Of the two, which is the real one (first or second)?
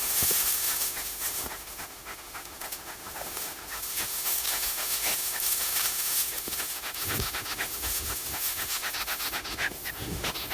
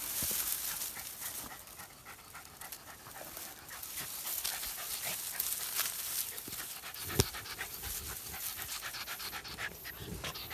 second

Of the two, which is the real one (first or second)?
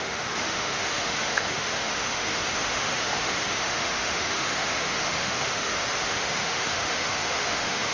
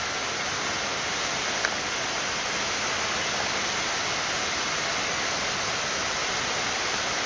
second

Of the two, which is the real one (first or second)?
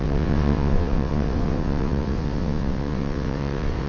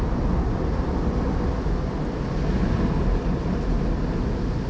second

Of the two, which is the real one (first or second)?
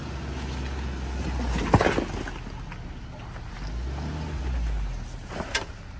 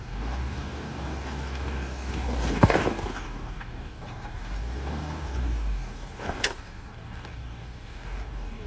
first